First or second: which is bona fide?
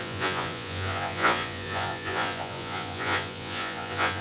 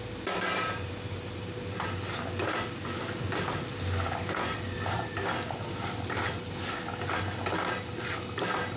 second